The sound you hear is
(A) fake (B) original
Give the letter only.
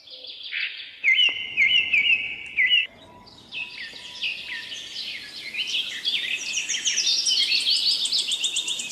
B